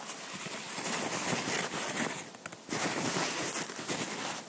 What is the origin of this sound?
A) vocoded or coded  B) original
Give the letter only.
B